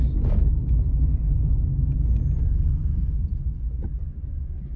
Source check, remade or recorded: recorded